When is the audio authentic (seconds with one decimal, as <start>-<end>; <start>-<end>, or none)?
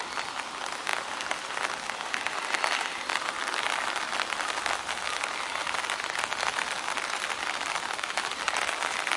0.0-9.2